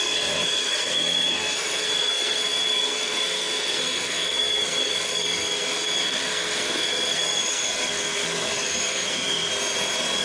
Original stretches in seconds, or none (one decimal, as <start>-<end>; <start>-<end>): 9.5-10.2